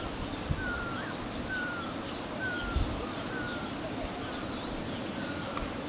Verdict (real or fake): fake